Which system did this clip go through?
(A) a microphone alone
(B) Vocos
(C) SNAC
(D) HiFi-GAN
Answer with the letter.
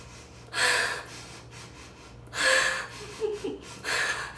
A